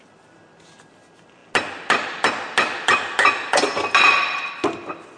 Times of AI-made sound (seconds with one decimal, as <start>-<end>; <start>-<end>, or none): none